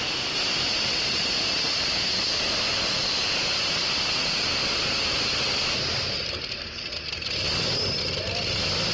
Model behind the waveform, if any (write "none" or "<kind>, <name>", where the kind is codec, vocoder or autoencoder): none